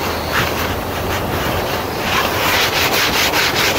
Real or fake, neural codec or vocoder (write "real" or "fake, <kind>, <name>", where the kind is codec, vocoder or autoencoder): fake, vocoder, BigVGAN v2